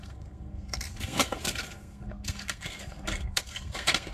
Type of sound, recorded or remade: remade